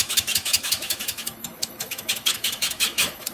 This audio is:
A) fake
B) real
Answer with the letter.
A